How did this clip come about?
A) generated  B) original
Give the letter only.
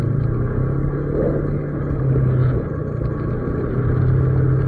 B